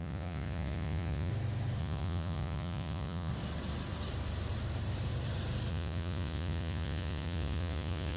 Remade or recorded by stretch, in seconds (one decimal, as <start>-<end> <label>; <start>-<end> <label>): 0.0-1.3 remade; 1.3-1.8 recorded; 1.8-3.3 remade; 3.3-5.7 recorded; 5.7-8.2 remade